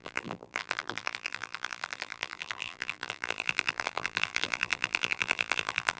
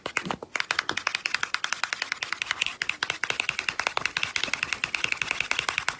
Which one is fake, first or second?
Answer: first